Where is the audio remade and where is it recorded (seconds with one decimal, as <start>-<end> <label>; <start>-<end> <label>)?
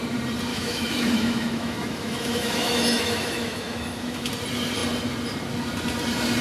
0.0-0.5 recorded; 0.5-4.3 remade; 4.3-6.4 recorded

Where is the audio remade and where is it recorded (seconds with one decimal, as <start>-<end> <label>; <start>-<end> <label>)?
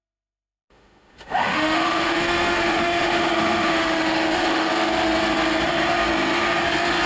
0.0-4.7 remade; 4.7-7.1 recorded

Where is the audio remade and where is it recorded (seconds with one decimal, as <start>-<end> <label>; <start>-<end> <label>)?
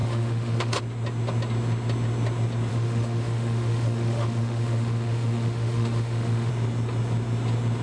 0.0-0.8 remade; 0.8-2.7 recorded; 2.7-6.5 remade; 6.5-7.8 recorded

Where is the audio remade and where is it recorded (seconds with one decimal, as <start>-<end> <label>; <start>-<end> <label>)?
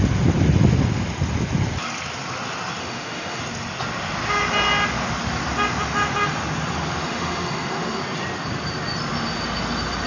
0.0-2.8 recorded; 2.8-3.4 remade; 3.4-7.0 recorded; 7.0-8.0 remade; 8.0-10.1 recorded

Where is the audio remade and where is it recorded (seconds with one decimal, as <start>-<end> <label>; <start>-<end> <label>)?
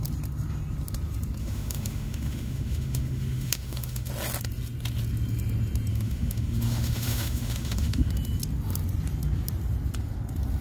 0.0-1.4 recorded; 1.4-4.1 remade; 4.1-5.9 recorded; 5.9-8.1 remade; 8.1-10.6 recorded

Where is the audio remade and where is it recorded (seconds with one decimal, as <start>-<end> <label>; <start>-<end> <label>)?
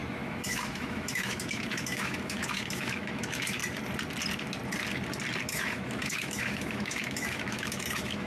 0.0-3.6 remade; 3.6-5.4 recorded; 5.4-8.3 remade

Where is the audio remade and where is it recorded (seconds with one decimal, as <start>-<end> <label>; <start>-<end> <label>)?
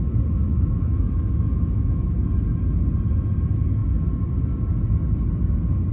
0.0-0.5 recorded; 0.5-2.2 remade; 2.2-5.9 recorded